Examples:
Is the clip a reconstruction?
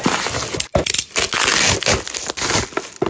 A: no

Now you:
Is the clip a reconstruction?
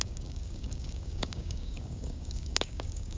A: yes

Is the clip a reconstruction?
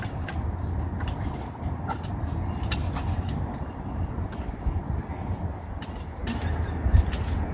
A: no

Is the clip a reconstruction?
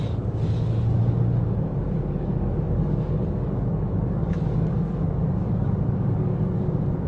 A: yes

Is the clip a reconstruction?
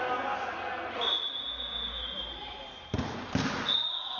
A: no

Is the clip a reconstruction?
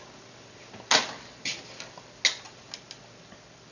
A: no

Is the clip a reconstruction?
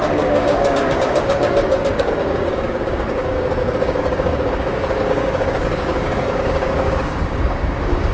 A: yes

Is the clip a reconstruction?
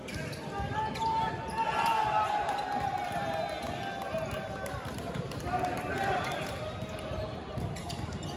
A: no